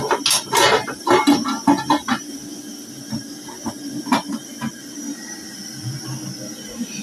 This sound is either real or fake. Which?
real